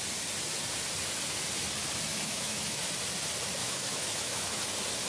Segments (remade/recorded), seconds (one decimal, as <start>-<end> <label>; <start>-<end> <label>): 0.0-2.1 recorded; 2.1-2.8 remade; 2.8-3.6 recorded; 3.6-4.6 remade; 4.6-5.1 recorded

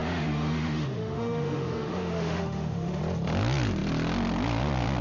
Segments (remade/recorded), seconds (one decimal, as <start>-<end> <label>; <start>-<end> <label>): 0.0-3.0 remade; 3.0-5.0 recorded